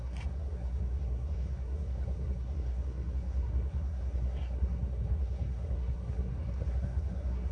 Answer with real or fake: fake